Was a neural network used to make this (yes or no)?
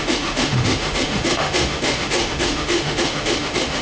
yes